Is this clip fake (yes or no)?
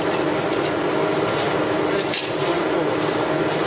no